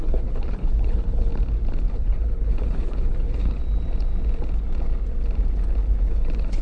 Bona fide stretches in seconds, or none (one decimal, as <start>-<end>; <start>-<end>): 1.3-1.9; 3.6-6.0